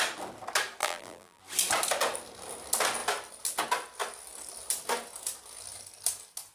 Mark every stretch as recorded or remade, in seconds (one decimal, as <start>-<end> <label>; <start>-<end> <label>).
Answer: 0.0-0.8 recorded; 0.8-1.4 remade; 1.4-6.5 recorded